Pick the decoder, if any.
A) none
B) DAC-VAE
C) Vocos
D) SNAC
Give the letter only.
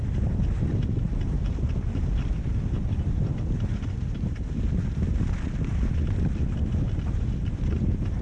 A